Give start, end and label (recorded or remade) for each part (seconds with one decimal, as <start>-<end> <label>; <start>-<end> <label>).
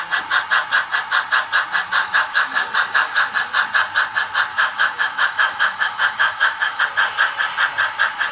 0.0-2.0 recorded; 2.0-3.3 remade; 3.3-4.5 recorded; 4.5-6.8 remade; 6.8-8.3 recorded